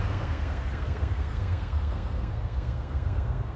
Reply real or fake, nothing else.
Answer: fake